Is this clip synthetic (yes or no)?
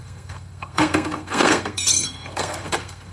yes